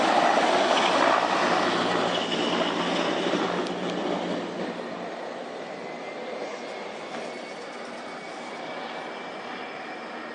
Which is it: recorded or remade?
recorded